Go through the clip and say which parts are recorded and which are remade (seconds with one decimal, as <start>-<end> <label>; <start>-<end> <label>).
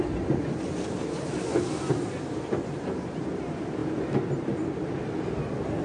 0.0-5.8 recorded